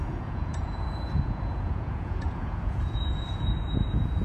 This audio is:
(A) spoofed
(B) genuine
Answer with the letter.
A